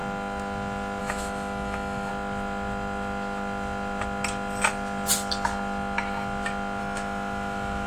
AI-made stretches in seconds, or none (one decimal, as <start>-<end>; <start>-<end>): 1.0-2.1; 6.8-7.9